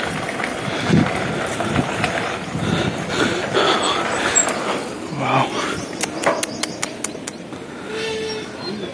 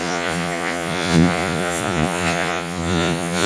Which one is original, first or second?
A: first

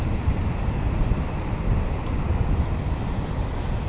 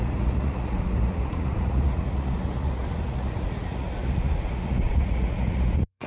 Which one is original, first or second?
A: first